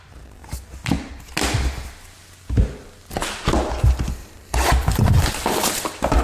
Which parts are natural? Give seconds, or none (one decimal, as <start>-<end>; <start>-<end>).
0.0-4.2